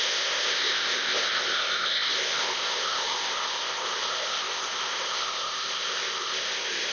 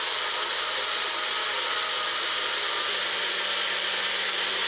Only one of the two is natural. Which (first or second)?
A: second